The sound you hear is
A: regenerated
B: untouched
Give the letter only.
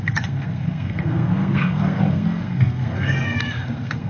A